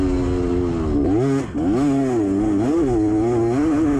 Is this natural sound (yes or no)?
yes